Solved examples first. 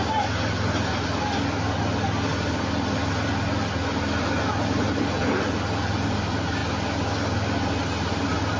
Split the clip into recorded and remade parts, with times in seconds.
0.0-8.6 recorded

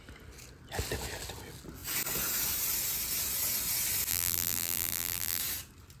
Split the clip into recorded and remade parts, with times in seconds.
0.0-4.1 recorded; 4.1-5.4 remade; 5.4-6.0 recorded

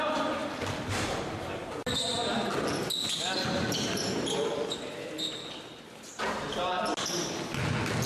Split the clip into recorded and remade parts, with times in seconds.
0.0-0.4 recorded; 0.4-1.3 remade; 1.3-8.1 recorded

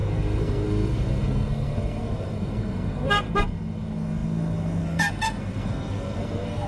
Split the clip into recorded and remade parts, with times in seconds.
0.0-6.7 remade

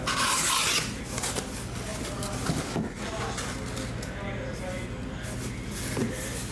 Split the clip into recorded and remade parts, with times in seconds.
0.0-6.5 recorded

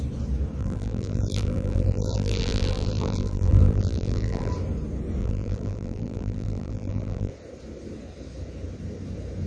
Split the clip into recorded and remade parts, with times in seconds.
0.0-0.6 recorded; 0.6-4.5 remade; 4.5-5.2 recorded; 5.2-7.3 remade; 7.3-9.5 recorded

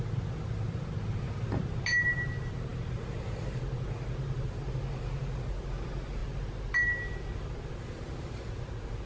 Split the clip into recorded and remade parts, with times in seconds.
0.0-9.1 recorded